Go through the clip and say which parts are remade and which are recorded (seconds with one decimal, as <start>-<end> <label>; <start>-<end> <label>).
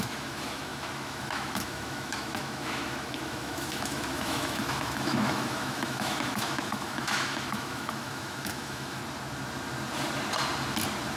0.0-9.0 remade; 9.0-11.2 recorded